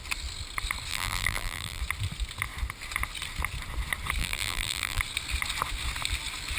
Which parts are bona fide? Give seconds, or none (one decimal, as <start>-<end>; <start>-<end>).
0.0-0.9; 1.8-4.2; 5.0-6.6

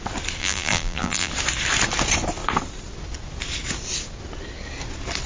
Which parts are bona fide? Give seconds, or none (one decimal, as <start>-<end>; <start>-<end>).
0.0-0.4; 1.3-5.3

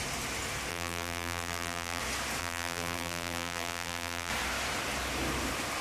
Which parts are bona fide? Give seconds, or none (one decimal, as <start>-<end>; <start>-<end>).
0.0-0.7; 2.0-2.4; 4.3-5.8

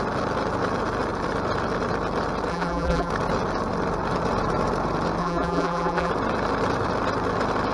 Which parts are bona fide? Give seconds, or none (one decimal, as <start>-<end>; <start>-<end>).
0.0-2.5; 3.1-5.2; 6.1-7.7

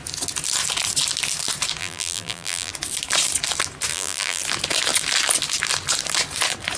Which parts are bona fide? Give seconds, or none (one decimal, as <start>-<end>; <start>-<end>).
0.0-1.8; 2.7-3.9; 4.4-6.8